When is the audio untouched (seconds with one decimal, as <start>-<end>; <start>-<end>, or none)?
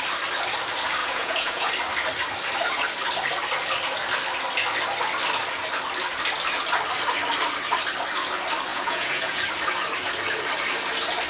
0.0-1.0; 1.7-8.7; 9.4-11.3